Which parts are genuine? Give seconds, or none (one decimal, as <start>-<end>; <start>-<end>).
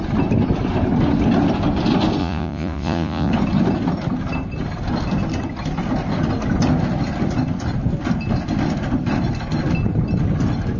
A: 0.0-2.2; 3.3-10.8